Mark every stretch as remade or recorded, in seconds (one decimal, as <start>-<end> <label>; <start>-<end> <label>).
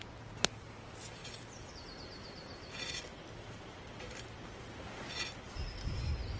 0.0-6.4 recorded